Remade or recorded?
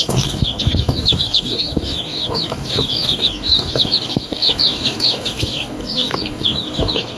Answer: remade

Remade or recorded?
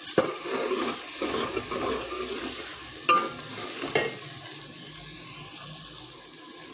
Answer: recorded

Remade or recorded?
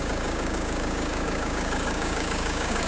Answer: remade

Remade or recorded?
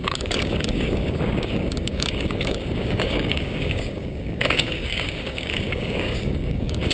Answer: remade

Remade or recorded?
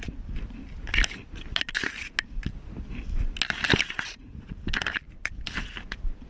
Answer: recorded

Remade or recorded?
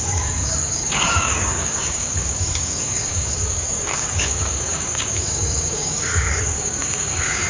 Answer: remade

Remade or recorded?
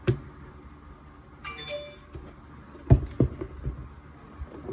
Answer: recorded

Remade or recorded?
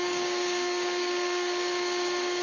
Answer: remade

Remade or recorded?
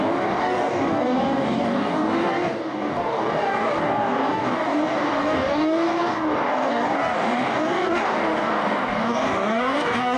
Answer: remade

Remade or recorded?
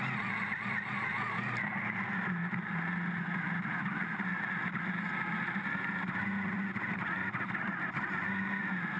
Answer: recorded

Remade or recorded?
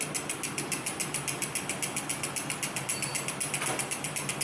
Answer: recorded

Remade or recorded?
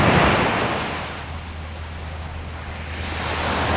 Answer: recorded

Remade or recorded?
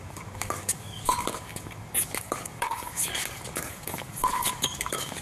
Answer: remade